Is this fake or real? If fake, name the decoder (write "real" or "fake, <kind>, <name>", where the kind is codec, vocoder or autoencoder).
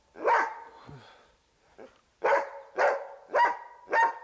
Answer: real